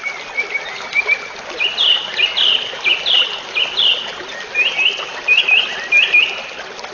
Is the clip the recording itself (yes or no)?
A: yes